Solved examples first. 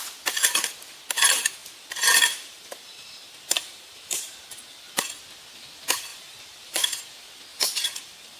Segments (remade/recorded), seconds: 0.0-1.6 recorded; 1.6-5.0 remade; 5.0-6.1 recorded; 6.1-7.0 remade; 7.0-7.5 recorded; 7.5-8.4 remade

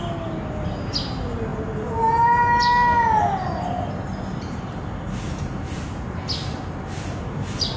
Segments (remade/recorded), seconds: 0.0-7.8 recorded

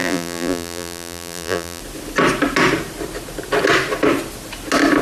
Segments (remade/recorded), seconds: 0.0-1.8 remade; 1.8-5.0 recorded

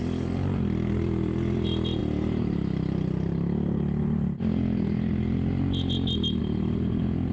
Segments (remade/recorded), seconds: 0.0-2.0 remade; 2.0-6.4 recorded; 6.4-7.3 remade

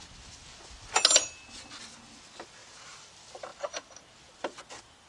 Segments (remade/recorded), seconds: 0.0-2.6 recorded; 2.6-3.1 remade; 3.1-3.5 recorded; 3.5-4.2 remade; 4.2-5.1 recorded

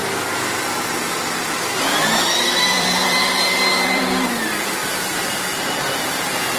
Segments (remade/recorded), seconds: 0.0-4.0 remade; 4.0-4.8 recorded; 4.8-6.0 remade; 6.0-6.6 recorded

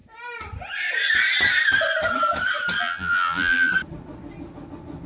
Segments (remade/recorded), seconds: 0.0-2.8 recorded; 2.8-3.7 remade; 3.7-5.1 recorded